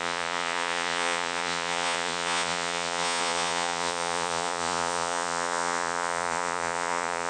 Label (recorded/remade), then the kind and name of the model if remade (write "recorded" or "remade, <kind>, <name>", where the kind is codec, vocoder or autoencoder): remade, vocoder, Vocos